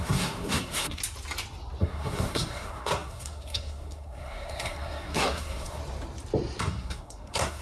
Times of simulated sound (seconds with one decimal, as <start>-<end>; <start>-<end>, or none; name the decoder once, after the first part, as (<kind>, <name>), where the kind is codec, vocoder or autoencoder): 0.0-1.0 (codec, SNAC); 1.8-5.8; 6.6-7.6